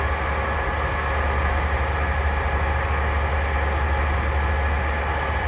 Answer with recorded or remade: recorded